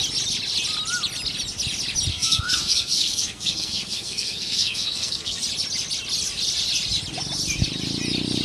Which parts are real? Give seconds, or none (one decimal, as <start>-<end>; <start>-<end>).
0.0-2.1; 5.4-8.4